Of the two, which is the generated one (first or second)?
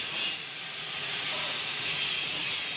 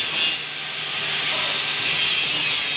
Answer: first